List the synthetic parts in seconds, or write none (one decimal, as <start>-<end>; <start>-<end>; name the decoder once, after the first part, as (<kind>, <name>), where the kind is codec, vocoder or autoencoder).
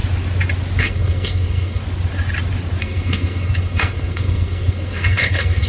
0.8-1.8 (codec, SNAC); 2.8-5.7